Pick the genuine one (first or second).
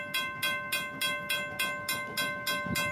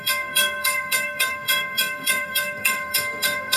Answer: first